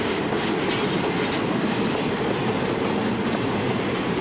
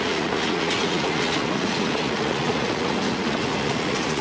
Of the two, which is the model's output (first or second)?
second